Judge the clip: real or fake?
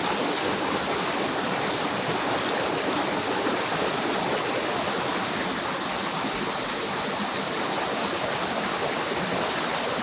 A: real